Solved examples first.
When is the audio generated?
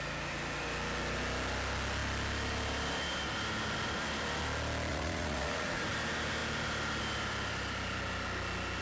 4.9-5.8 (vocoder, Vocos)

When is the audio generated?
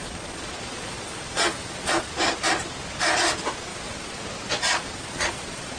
0.0-2.1 (vocoder, Vocos); 3.7-4.2; 4.7-5.8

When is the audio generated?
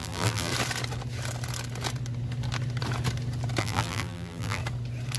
0.0-0.5 (vocoder, BigVGAN v2); 3.6-4.6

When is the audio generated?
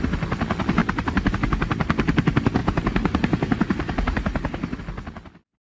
0.8-1.3 (vocoder, BigVGAN v2); 2.6-4.8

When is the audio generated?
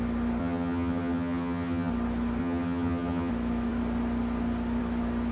0.4-1.9 (vocoder, HiFi-GAN); 2.4-3.3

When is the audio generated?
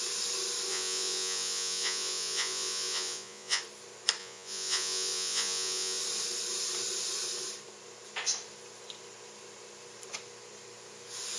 0.7-3.6 (vocoder, Vocos); 4.2-6.0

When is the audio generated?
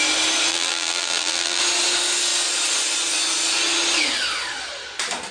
0.5-1.6 (vocoder, BigVGAN v2)